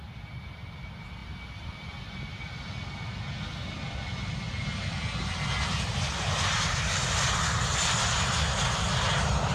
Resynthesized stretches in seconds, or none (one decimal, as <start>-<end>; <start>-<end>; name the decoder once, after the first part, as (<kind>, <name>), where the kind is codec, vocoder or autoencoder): none